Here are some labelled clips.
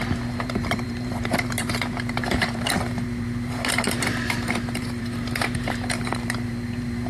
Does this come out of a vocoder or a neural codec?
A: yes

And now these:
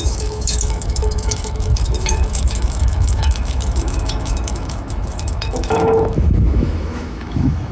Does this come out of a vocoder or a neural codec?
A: yes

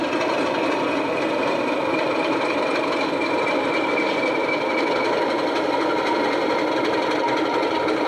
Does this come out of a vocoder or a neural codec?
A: yes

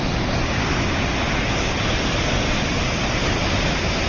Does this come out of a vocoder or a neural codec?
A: no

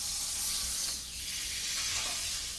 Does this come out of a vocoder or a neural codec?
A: yes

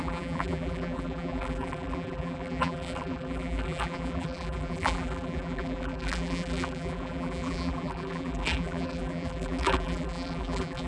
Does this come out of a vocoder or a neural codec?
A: yes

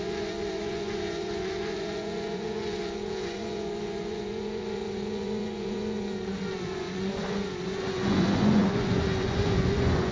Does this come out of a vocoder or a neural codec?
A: yes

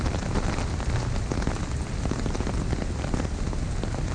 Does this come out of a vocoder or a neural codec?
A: no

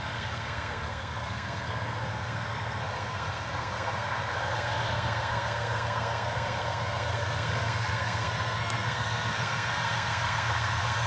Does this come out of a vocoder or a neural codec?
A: yes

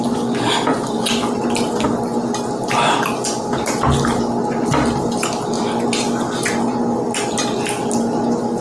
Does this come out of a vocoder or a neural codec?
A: no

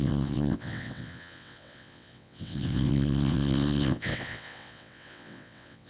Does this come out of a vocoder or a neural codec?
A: yes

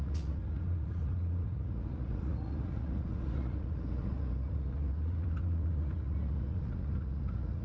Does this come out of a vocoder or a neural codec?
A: yes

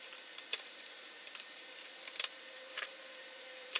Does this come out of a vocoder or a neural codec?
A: yes